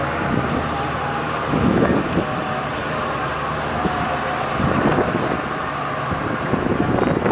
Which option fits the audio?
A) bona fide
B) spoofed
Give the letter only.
A